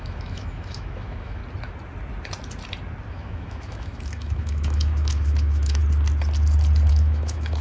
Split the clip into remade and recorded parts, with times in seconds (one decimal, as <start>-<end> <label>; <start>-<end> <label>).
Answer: 0.0-1.4 remade; 1.4-3.1 recorded; 3.1-5.8 remade; 5.8-6.9 recorded; 6.9-7.6 remade